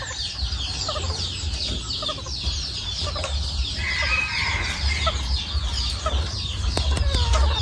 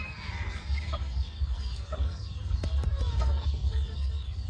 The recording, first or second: first